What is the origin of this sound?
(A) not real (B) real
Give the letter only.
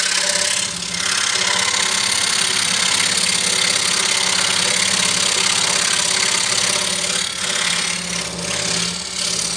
B